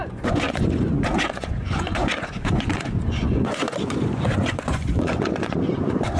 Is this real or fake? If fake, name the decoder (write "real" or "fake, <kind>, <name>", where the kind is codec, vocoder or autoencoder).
fake, vocoder, Vocos